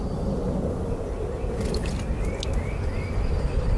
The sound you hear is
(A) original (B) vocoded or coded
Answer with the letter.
A